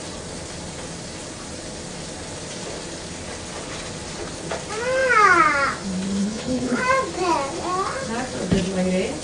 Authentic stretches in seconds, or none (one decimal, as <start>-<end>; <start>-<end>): 0.0-6.2; 6.8-9.2